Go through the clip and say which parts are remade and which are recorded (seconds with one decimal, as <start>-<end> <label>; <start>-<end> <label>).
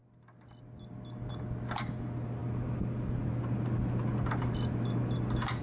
0.0-5.6 recorded